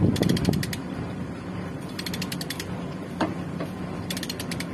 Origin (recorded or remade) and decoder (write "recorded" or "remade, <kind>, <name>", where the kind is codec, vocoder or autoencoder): recorded